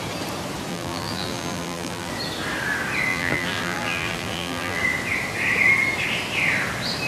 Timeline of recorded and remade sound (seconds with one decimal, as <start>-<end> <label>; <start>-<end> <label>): 0.0-0.7 recorded; 0.7-2.1 remade; 2.1-3.1 recorded; 3.1-4.8 remade; 4.8-7.1 recorded